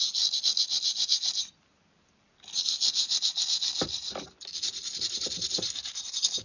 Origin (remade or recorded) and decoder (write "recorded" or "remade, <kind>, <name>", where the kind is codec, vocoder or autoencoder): recorded